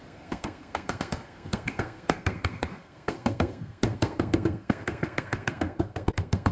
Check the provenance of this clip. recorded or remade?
remade